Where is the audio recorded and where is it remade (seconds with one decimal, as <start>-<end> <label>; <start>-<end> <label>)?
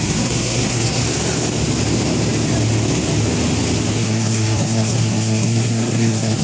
0.0-1.0 remade; 1.0-3.9 recorded; 3.9-6.4 remade